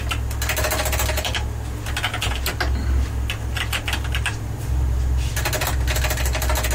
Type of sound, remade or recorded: recorded